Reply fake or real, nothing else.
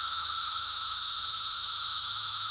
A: fake